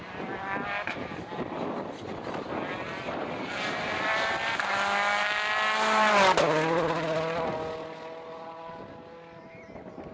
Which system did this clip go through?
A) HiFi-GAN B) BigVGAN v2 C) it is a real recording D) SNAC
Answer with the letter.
C